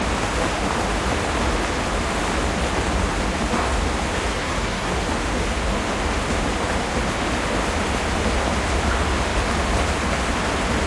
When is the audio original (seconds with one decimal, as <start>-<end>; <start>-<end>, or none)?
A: 0.0-4.3; 4.9-10.9

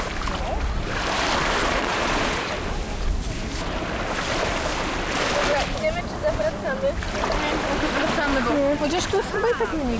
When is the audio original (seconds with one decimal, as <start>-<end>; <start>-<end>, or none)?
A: 0.0-1.6; 2.5-10.0

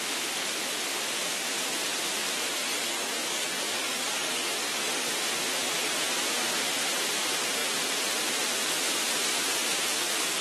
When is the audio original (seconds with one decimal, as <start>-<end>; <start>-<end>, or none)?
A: 0.0-2.6; 5.1-10.4

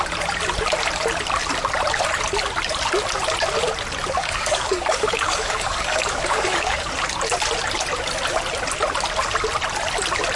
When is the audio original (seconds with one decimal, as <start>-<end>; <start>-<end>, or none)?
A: 0.0-4.2; 6.9-10.4

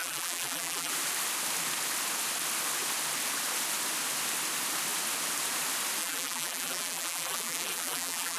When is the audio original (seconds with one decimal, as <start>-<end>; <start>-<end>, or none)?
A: 0.9-6.0

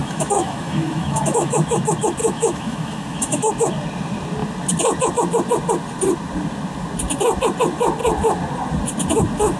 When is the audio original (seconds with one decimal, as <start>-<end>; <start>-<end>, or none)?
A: 1.8-2.2; 3.5-9.6

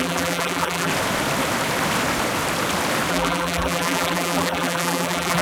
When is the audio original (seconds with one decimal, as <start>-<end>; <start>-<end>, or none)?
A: 0.9-3.1